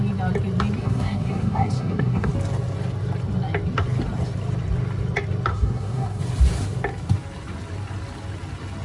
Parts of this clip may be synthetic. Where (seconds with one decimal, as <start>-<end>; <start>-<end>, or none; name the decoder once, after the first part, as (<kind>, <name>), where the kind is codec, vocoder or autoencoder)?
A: 0.8-2.3 (codec, SNAC); 5.5-6.2